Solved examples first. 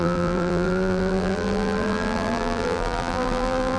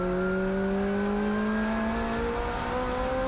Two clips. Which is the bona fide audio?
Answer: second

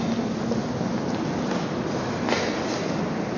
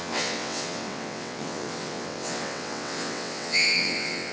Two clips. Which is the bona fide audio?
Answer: first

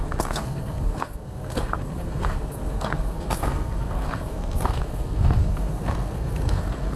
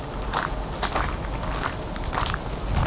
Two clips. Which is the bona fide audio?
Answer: second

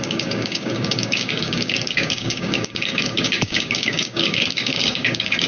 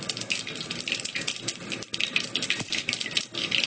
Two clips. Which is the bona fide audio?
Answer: second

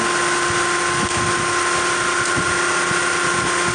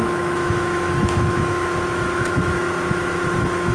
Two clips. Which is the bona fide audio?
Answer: first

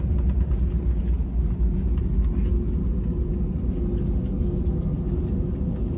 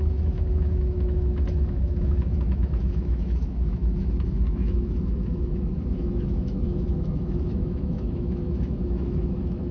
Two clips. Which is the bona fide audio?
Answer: first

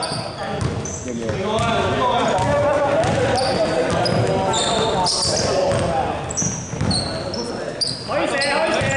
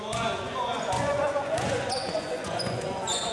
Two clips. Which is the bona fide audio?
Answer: first